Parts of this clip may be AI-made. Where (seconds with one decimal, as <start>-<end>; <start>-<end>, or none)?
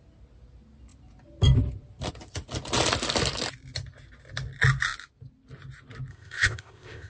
6.1-7.1